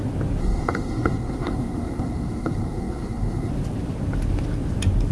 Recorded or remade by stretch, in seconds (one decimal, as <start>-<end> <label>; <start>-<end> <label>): 0.0-0.4 recorded; 0.4-3.5 remade; 3.5-5.1 recorded